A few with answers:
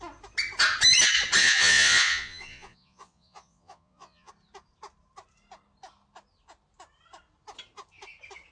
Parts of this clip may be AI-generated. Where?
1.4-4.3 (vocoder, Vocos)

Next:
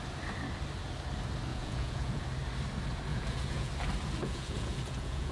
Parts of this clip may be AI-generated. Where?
1.5-2.2 (vocoder, Vocos); 3.1-3.7; 4.2-5.3

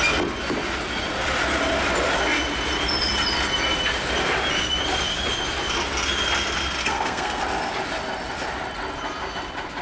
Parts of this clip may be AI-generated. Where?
6.8-7.4 (codec, SNAC)

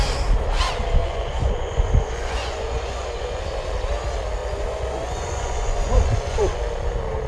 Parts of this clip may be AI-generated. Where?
1.0-3.4 (vocoder, Vocos); 4.4-6.6

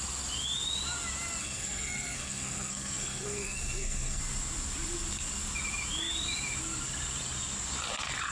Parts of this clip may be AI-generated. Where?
1.4-4.2 (codec, SNAC)